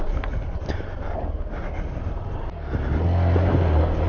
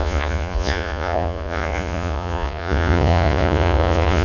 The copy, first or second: second